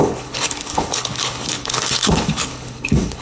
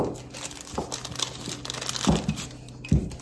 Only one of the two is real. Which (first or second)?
second